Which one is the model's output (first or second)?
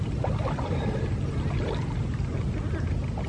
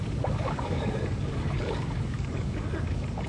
second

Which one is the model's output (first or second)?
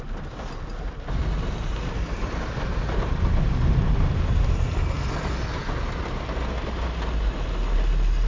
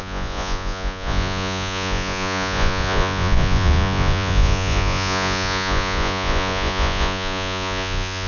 second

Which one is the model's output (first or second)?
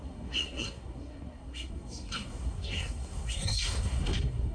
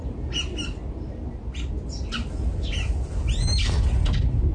first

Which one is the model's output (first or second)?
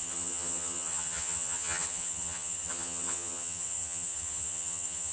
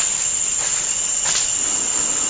first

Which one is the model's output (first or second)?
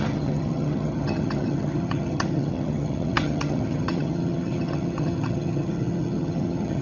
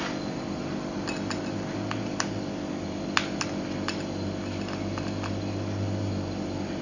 first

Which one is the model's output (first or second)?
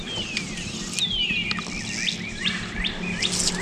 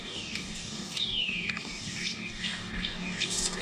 second